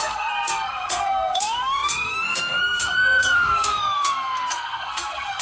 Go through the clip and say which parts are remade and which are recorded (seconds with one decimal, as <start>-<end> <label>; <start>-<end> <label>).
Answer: 0.0-5.4 remade